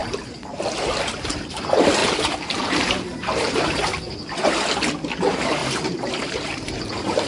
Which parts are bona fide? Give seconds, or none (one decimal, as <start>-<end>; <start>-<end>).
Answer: 1.5-2.0; 3.6-5.6